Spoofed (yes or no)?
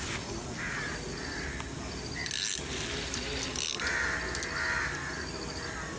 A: no